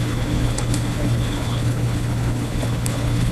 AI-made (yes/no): yes